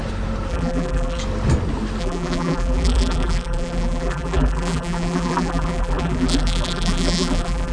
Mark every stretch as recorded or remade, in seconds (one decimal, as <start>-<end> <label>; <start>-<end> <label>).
0.0-0.5 recorded; 0.5-1.2 remade; 1.2-2.0 recorded; 2.0-7.7 remade